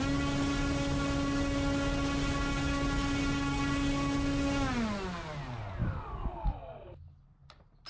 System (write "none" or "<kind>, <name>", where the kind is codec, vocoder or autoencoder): none